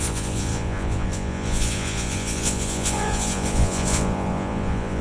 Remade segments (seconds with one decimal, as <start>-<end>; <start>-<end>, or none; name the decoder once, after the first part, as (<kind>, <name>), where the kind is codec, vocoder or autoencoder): 0.0-5.0 (vocoder, Vocos)